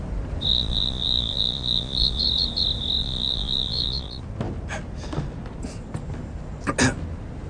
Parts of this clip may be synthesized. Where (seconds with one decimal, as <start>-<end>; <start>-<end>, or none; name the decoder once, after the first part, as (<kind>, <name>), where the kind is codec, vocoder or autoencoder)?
0.5-2.2 (vocoder, Vocos); 3.0-4.2

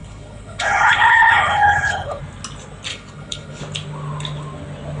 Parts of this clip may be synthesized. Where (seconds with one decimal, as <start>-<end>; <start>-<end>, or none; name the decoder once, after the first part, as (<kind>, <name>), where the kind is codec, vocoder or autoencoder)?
0.0-2.2 (codec, HILCodec); 2.9-3.6

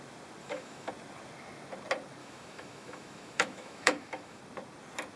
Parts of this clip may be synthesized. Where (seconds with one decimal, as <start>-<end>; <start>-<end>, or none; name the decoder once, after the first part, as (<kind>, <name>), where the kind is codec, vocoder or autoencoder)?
0.4-0.9 (autoencoder, DAC-VAE); 2.2-4.4

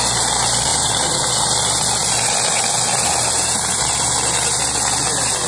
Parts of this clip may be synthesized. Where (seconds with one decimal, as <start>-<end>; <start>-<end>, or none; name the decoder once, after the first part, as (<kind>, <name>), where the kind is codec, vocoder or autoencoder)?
0.7-1.3 (vocoder, BigVGAN v2)